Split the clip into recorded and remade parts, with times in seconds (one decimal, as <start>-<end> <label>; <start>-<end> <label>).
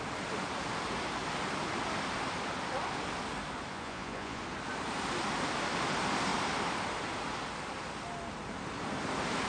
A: 0.0-3.7 recorded; 3.7-4.4 remade; 4.4-9.5 recorded